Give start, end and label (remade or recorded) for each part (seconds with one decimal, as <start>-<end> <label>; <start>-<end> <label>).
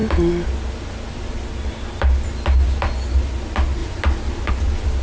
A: 0.0-5.0 recorded